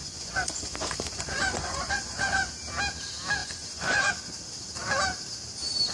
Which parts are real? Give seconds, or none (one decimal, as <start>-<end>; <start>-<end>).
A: 2.5-3.4; 4.1-5.9